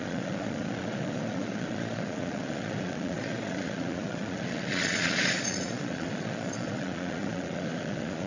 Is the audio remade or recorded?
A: remade